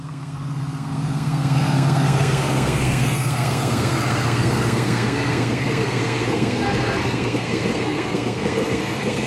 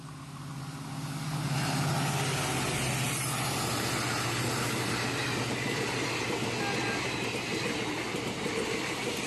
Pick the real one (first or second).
second